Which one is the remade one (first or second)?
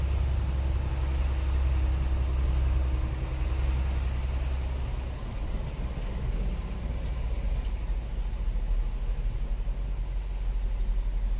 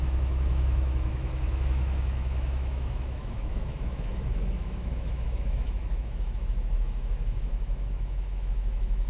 second